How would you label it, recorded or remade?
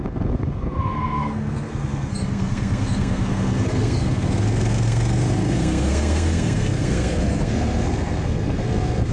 remade